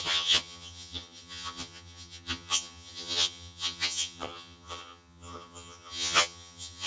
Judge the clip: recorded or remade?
remade